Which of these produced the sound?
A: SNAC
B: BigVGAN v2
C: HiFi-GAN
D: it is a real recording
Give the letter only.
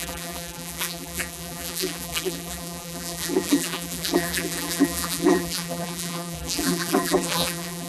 B